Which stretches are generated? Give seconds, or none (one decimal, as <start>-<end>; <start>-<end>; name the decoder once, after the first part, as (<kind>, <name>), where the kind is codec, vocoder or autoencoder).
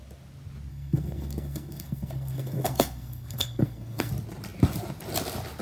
0.7-4.1 (codec, SNAC)